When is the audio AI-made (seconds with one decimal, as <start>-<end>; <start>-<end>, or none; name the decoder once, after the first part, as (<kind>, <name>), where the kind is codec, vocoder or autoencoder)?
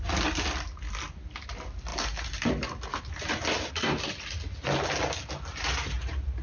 none